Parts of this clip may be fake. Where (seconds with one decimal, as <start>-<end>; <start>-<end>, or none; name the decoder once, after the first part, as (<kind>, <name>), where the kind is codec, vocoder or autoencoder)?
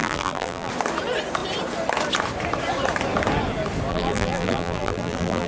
0.0-0.7 (vocoder, BigVGAN v2); 3.9-5.5